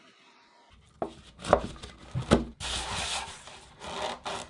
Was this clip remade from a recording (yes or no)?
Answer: no